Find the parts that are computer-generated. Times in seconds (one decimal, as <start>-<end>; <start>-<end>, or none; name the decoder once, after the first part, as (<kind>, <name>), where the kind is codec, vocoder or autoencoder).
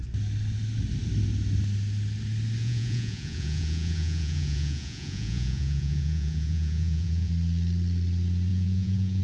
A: 2.6-7.3 (vocoder, Vocos); 8.5-9.2